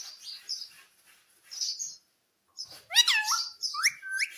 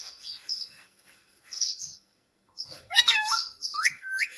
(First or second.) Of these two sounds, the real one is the first